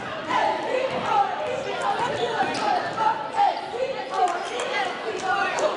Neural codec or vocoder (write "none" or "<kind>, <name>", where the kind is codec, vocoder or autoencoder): none